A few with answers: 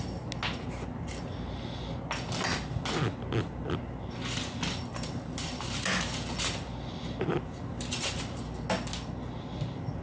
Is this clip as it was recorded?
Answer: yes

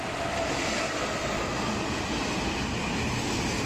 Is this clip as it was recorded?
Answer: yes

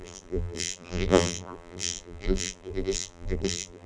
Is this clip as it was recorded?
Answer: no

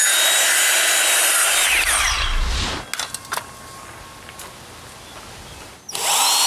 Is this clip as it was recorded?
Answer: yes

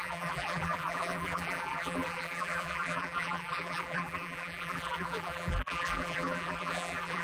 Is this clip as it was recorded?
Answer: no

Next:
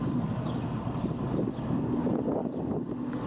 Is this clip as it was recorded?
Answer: yes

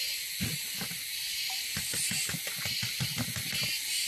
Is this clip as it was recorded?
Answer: yes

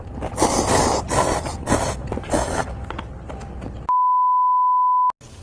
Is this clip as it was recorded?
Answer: yes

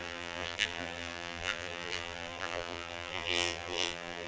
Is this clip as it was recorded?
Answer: no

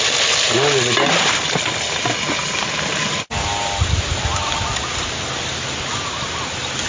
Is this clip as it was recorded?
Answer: yes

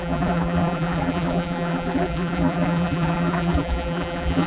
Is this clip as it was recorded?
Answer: no